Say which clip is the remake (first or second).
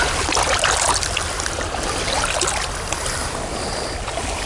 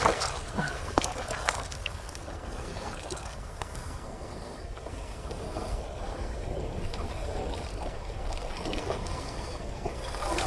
second